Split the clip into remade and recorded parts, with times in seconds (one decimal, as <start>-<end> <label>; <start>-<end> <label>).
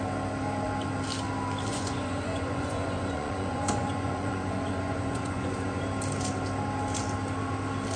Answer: 0.0-1.7 recorded; 1.7-5.8 remade; 5.8-8.0 recorded